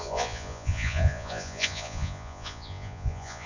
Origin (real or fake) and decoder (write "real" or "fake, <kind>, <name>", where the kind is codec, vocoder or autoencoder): fake, vocoder, Vocos